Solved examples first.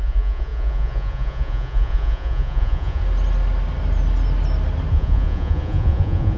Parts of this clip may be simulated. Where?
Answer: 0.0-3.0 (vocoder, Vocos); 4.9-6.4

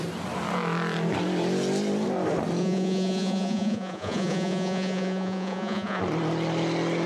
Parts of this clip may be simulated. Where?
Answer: 2.6-6.0 (vocoder, Vocos)

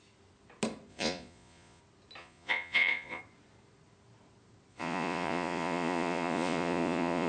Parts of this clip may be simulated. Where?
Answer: 0.9-1.8 (vocoder, Vocos); 2.2-3.2; 4.7-7.3

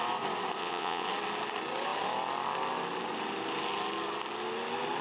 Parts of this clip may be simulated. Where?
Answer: 0.6-1.1 (vocoder, Vocos)